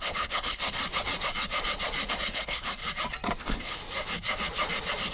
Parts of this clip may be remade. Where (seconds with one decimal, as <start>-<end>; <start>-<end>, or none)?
0.0-0.8; 2.1-2.8; 3.4-3.8